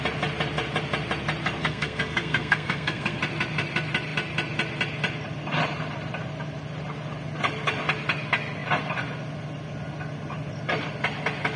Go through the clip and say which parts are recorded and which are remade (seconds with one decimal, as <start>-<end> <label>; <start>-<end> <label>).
0.0-1.6 recorded; 1.6-3.2 remade; 3.2-11.6 recorded